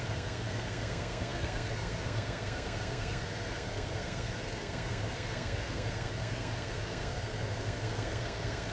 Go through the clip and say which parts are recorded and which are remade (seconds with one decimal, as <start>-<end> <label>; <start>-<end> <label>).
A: 0.0-8.7 remade